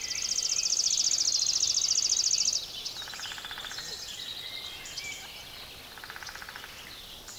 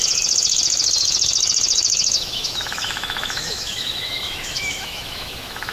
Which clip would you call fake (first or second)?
second